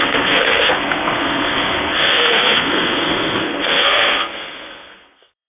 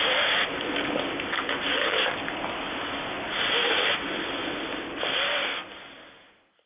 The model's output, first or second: first